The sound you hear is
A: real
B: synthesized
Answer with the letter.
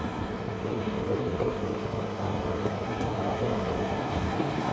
B